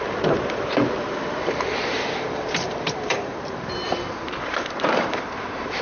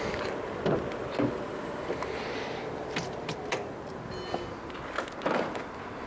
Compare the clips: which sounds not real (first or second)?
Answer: first